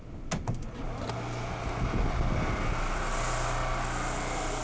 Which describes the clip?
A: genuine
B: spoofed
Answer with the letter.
A